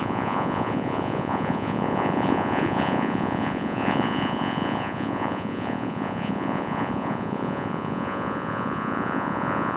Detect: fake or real fake